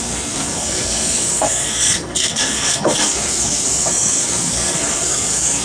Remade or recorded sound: remade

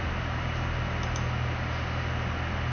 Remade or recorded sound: recorded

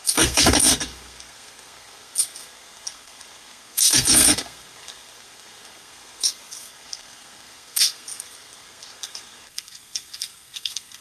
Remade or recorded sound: remade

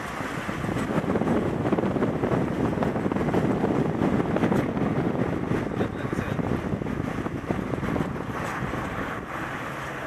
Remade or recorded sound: recorded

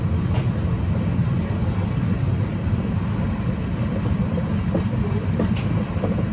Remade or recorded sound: recorded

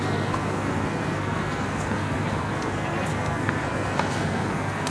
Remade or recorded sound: remade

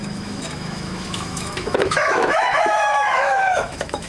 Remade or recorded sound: remade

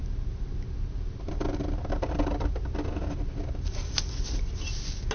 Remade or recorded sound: recorded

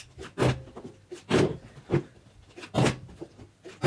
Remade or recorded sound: recorded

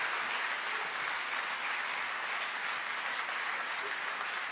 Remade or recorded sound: recorded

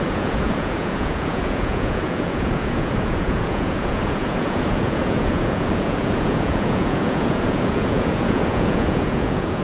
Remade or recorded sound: remade